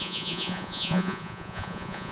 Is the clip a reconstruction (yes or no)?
yes